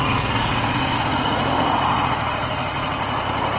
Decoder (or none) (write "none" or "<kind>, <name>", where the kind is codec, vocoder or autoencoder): vocoder, Vocos